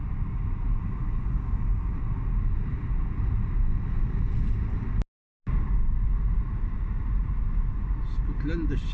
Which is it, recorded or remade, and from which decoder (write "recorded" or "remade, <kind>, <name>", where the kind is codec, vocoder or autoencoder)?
recorded